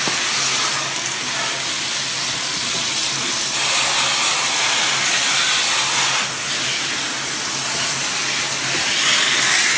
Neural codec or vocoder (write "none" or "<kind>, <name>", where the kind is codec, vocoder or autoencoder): none